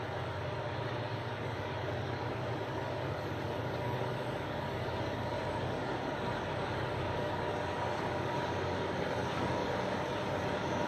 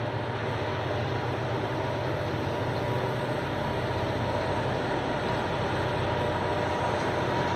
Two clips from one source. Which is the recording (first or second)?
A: second